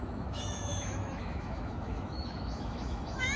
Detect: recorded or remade remade